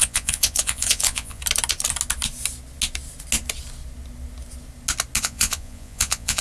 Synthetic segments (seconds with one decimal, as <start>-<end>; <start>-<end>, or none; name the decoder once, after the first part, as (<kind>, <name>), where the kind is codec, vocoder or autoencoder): 0.0-1.4 (vocoder, Vocos); 5.2-6.4